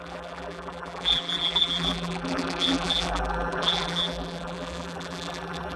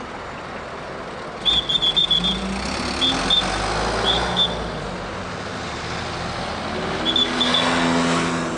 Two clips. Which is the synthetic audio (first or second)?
first